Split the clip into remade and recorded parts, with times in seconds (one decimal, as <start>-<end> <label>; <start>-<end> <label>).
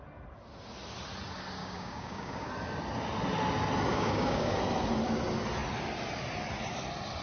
0.0-1.6 recorded; 1.6-2.5 remade; 2.5-3.9 recorded; 3.9-4.6 remade; 4.6-7.2 recorded